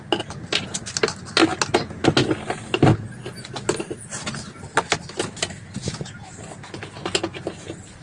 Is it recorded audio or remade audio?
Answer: recorded